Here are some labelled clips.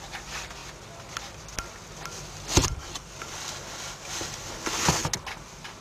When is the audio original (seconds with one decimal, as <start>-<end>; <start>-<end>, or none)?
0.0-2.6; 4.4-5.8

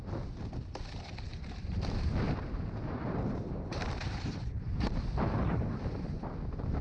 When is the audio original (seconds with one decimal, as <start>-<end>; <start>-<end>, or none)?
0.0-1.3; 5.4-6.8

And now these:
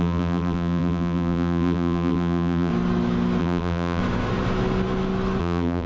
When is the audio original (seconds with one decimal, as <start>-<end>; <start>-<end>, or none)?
2.7-3.4; 4.0-5.4

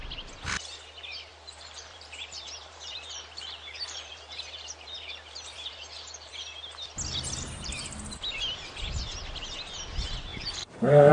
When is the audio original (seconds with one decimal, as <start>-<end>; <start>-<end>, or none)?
0.0-1.3; 6.3-10.3

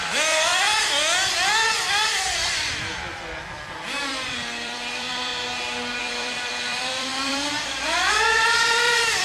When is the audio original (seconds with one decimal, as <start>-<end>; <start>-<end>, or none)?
0.5-4.1; 5.3-6.0

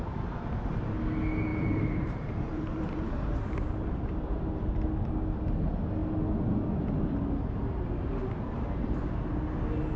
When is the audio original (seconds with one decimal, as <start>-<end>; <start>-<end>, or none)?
0.0-1.5; 4.4-10.0

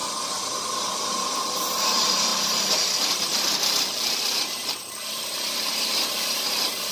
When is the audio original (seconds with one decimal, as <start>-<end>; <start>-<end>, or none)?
0.0-1.0